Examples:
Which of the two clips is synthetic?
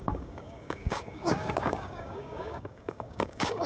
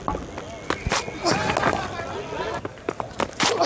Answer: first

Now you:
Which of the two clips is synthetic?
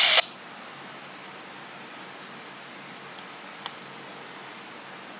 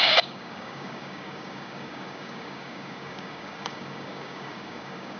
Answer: second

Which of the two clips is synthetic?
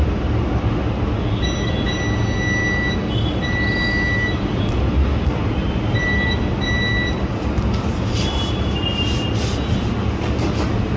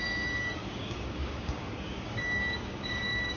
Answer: second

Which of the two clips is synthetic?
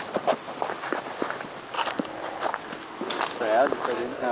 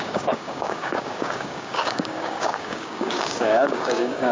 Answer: second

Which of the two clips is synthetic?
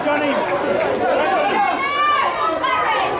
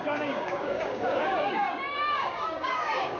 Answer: second